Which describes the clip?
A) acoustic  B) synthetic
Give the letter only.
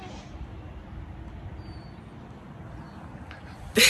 A